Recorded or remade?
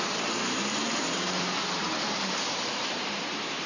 remade